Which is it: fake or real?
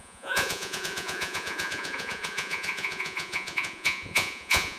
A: fake